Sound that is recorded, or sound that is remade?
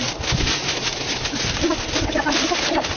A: recorded